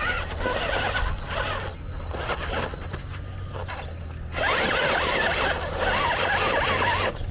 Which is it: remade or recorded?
recorded